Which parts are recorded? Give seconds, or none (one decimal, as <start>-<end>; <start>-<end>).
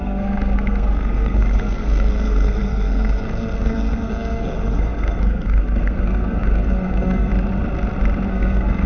7.3-8.3